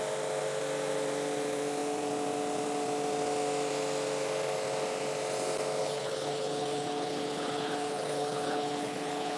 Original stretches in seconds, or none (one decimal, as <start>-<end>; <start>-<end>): 0.0-5.8